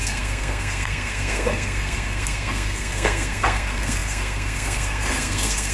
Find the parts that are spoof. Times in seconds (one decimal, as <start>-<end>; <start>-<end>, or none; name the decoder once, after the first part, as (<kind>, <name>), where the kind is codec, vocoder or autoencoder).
0.0-5.7 (codec, SNAC)